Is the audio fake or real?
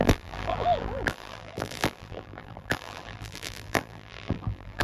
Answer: fake